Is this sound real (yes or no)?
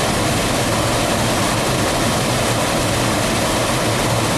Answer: yes